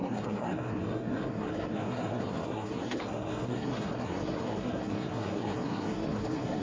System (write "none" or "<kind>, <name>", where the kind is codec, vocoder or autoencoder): codec, SNAC